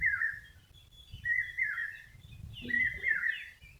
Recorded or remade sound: remade